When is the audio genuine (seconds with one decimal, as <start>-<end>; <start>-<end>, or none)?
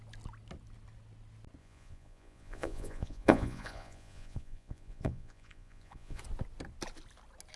0.0-1.6; 6.2-7.6